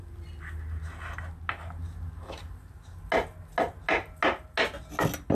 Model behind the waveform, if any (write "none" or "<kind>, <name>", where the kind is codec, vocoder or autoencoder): none